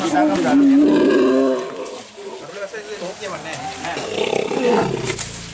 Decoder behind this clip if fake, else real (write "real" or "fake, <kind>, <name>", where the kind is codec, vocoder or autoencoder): real